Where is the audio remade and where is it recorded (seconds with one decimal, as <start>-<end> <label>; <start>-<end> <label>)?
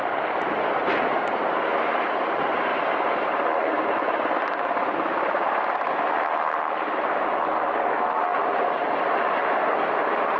0.0-10.4 recorded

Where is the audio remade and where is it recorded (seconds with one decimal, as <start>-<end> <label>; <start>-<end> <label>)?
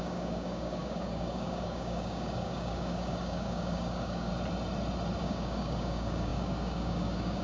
0.0-4.3 remade; 4.3-5.2 recorded; 5.2-7.4 remade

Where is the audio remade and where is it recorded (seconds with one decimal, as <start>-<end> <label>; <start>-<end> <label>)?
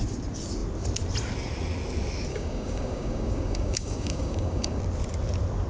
0.0-2.3 recorded; 2.3-4.8 remade; 4.8-5.7 recorded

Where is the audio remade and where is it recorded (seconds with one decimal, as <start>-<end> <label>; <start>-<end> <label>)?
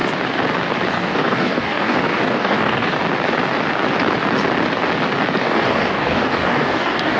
0.0-0.9 recorded; 0.9-2.9 remade; 2.9-5.4 recorded; 5.4-7.2 remade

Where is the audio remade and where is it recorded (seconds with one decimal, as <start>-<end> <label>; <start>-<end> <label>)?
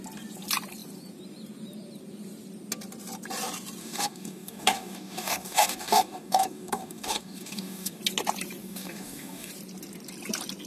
0.0-3.8 recorded; 3.8-8.0 remade; 8.0-8.6 recorded; 8.6-9.5 remade; 9.5-10.7 recorded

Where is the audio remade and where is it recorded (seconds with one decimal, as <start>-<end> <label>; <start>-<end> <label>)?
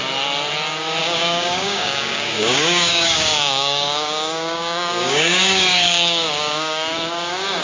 0.0-1.0 recorded; 1.0-7.6 remade